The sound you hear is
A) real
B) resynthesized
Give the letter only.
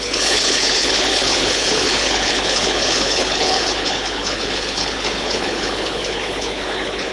B